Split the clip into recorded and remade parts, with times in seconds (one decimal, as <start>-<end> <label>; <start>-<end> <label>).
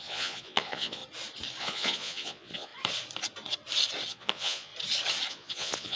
0.0-1.0 remade; 1.0-1.6 recorded; 1.6-2.7 remade; 2.7-4.1 recorded; 4.1-4.7 remade; 4.7-5.3 recorded; 5.3-6.0 remade